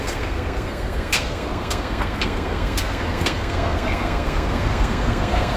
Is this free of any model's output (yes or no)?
no